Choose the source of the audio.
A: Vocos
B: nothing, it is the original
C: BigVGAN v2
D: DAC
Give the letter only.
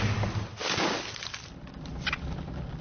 B